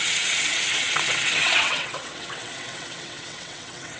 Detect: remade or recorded remade